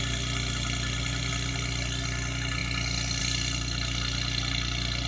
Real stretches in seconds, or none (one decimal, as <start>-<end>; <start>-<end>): 0.0-5.1